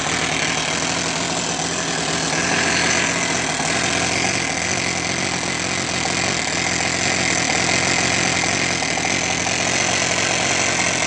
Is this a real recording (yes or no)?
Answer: yes